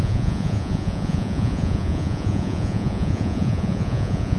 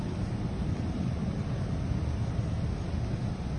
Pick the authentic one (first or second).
second